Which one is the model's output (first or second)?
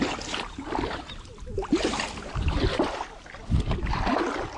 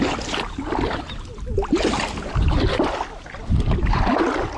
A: first